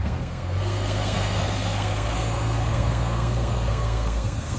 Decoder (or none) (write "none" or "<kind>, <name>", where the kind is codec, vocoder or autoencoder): codec, SNAC